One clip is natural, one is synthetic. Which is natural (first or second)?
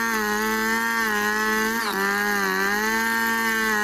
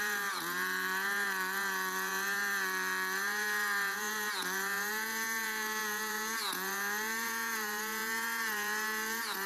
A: first